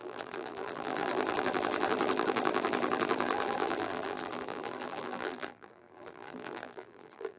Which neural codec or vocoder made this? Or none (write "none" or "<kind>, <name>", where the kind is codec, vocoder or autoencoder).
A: vocoder, BigVGAN v2